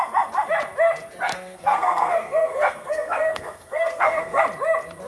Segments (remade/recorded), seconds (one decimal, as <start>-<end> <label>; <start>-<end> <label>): 0.0-1.3 recorded; 1.3-4.4 remade; 4.4-5.1 recorded